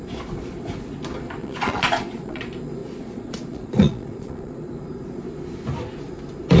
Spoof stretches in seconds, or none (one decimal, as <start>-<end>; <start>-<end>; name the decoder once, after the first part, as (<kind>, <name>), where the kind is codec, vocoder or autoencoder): 1.4-2.4 (vocoder, Vocos); 2.8-4.7